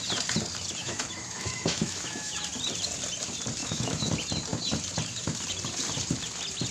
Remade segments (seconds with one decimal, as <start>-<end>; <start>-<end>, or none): 0.8-2.4; 3.6-4.1